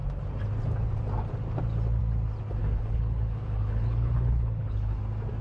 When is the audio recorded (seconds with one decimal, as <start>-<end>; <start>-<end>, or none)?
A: 0.0-2.6; 5.0-5.4